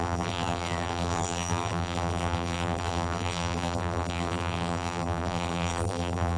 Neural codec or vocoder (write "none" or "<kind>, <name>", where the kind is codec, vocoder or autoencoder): vocoder, BigVGAN v2